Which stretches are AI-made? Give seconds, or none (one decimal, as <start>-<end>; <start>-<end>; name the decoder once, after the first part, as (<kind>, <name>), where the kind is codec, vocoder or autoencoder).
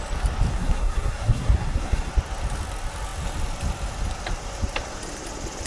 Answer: 0.5-2.1 (codec, SNAC)